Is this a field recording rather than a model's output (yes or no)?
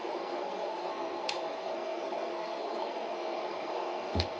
no